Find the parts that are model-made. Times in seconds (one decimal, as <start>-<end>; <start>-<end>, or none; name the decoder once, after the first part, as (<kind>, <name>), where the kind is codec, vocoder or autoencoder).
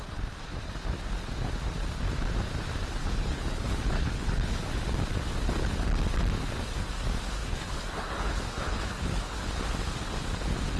3.0-4.6 (codec, HILCodec); 7.4-9.5